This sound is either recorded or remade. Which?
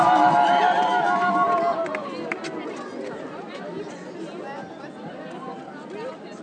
recorded